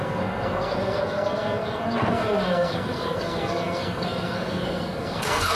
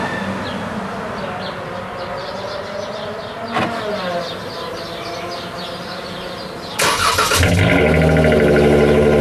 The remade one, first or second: first